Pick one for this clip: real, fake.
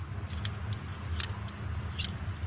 real